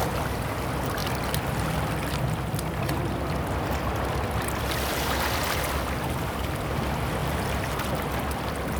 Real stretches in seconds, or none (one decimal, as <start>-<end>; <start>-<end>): 0.0-8.8

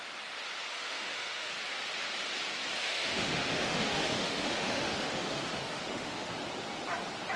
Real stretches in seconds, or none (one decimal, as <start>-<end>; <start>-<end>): 0.0-0.7; 1.5-2.8; 6.3-7.4

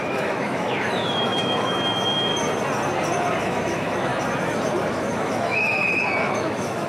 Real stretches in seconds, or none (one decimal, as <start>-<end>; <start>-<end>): 2.3-3.4; 4.1-4.9

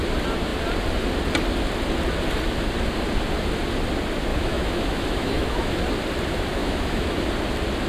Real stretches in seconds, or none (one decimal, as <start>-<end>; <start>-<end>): 0.0-4.3; 5.8-6.6; 7.2-7.9

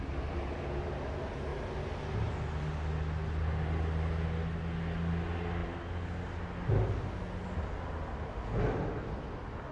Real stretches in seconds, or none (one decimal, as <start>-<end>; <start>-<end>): 0.0-9.7

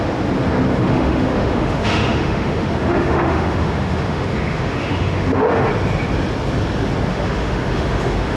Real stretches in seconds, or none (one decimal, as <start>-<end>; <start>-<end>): 0.0-0.7; 5.7-7.1

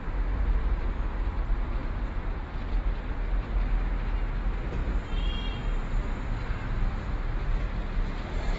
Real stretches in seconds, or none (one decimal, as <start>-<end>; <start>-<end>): 0.0-8.6

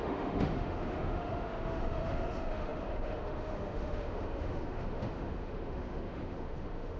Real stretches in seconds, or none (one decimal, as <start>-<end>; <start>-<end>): none